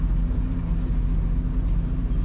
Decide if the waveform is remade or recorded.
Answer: recorded